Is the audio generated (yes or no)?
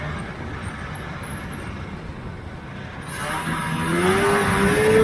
no